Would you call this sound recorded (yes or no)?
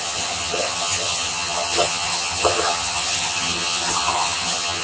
no